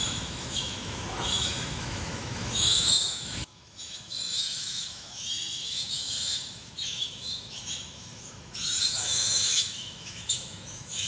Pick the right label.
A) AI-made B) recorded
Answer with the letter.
A